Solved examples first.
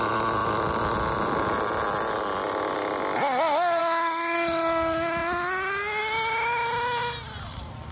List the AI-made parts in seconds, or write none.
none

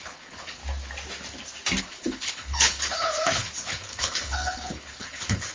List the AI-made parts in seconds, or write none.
0.0-0.6 (codec, HILCodec); 1.8-5.5